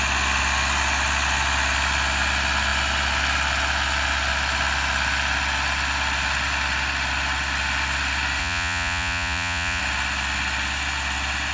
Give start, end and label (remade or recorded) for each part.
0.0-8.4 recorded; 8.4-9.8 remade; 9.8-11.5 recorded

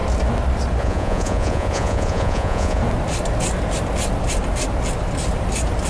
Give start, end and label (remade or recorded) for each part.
0.0-0.8 recorded; 0.8-2.8 remade; 2.8-5.9 recorded

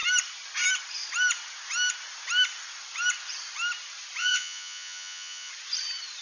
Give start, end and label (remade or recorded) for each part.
0.0-4.2 recorded; 4.2-5.5 remade; 5.5-6.2 recorded